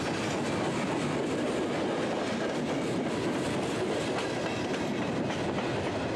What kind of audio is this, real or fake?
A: real